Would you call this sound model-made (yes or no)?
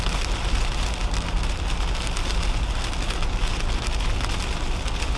no